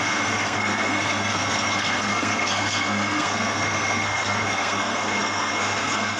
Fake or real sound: fake